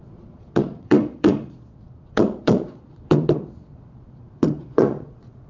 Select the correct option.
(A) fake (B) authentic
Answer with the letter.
A